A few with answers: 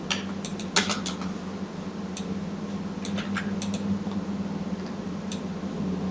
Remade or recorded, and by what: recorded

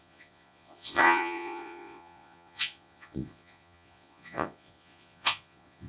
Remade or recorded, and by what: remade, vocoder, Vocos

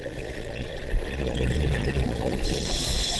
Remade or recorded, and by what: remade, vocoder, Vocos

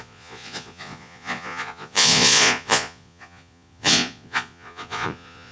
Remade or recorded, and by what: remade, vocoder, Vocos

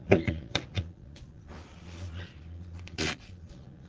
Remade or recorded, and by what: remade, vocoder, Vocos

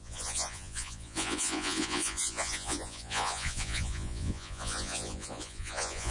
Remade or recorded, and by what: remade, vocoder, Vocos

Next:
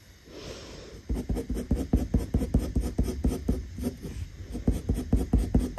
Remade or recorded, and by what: recorded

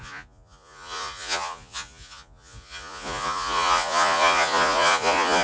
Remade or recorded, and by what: remade, vocoder, Vocos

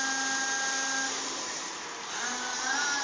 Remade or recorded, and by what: recorded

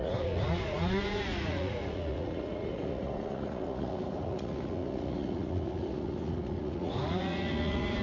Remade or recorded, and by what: remade, vocoder, Vocos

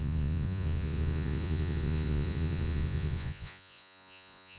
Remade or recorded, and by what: remade, vocoder, Vocos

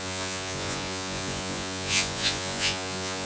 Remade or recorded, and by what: remade, vocoder, Vocos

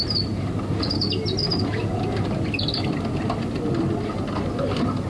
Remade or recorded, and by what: recorded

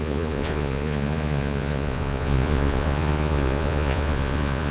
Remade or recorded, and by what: remade, vocoder, Vocos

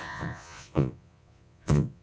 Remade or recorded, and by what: remade, vocoder, Vocos